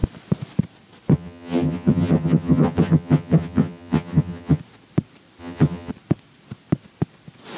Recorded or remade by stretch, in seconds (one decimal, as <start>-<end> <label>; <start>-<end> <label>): 0.0-1.1 recorded; 1.1-4.6 remade; 4.6-5.4 recorded; 5.4-5.9 remade; 5.9-7.6 recorded